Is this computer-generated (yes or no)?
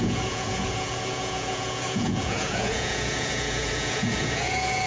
yes